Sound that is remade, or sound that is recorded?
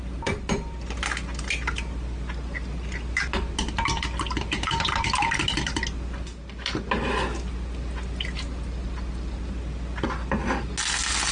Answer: recorded